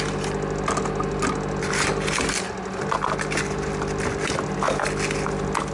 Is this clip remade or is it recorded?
recorded